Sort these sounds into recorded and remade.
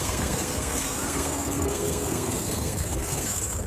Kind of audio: remade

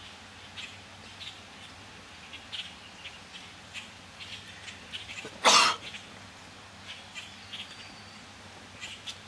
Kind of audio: recorded